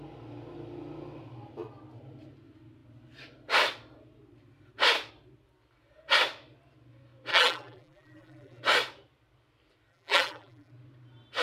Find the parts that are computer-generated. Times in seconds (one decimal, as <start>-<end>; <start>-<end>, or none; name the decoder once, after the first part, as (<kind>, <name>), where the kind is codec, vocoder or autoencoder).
7.3-8.6 (vocoder, BigVGAN v2); 9.9-10.7